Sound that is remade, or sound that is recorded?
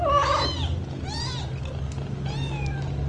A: recorded